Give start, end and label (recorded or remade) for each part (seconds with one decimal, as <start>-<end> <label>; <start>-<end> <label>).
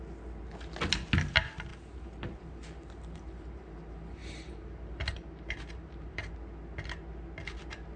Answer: 0.0-1.7 recorded; 1.7-6.3 remade; 6.3-8.0 recorded